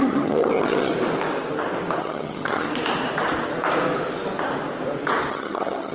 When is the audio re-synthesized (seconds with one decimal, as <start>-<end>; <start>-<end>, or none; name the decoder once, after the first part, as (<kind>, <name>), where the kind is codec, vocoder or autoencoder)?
0.0-0.9 (vocoder, HiFi-GAN); 2.0-2.7; 5.3-5.9